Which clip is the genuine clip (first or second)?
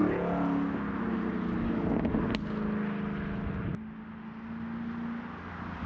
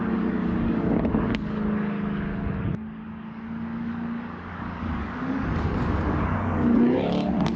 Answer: first